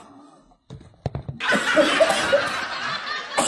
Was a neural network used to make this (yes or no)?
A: no